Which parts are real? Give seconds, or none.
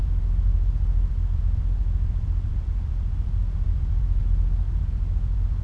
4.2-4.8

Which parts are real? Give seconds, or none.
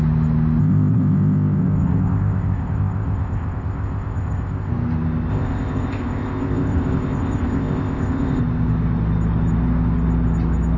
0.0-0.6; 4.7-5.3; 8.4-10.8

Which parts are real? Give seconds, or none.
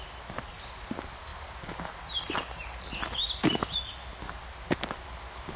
0.0-5.6